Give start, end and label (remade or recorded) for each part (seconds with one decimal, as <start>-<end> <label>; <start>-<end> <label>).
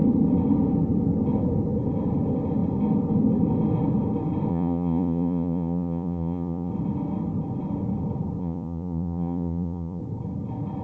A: 0.0-4.5 recorded; 4.5-6.7 remade; 6.7-8.4 recorded; 8.4-10.0 remade; 10.0-10.8 recorded